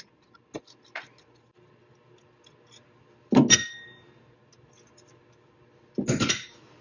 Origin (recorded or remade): recorded